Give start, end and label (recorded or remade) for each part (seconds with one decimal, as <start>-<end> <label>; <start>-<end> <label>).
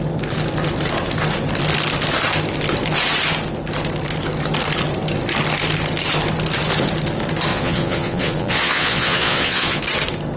0.0-7.5 recorded; 7.5-9.8 remade; 9.8-10.4 recorded